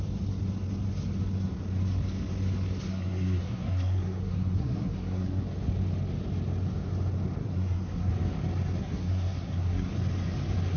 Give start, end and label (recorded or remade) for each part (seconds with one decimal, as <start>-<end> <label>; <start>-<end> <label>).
0.0-2.9 recorded; 2.9-5.4 remade; 5.4-7.4 recorded; 7.4-8.1 remade; 8.1-8.8 recorded; 8.8-9.9 remade; 9.9-10.8 recorded